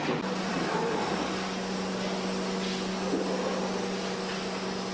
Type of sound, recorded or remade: recorded